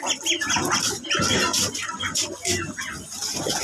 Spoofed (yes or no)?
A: no